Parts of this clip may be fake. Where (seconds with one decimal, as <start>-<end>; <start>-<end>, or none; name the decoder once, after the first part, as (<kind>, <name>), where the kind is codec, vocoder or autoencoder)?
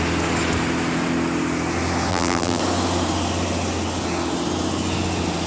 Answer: 2.1-2.6 (vocoder, BigVGAN v2)